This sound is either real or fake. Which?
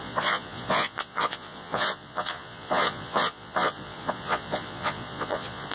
fake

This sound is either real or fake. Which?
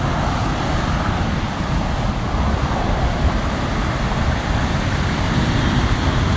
real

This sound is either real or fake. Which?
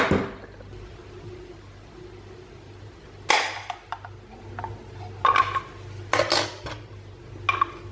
real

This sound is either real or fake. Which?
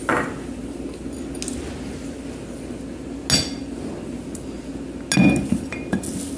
real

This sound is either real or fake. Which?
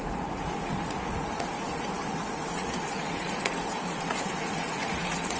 fake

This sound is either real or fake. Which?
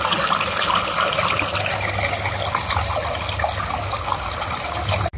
real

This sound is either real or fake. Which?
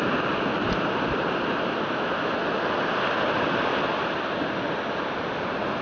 real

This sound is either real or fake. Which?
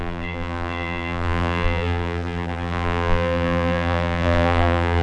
fake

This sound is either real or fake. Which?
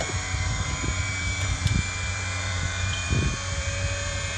fake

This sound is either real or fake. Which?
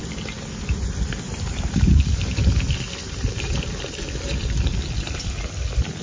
real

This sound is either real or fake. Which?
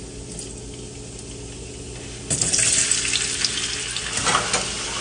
real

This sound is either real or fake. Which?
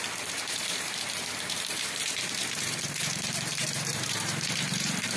fake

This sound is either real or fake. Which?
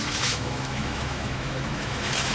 fake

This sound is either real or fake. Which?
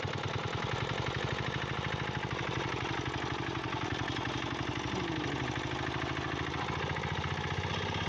real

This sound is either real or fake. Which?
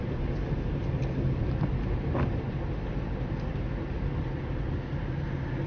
real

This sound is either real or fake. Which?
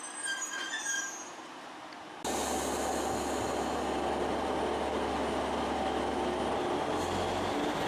real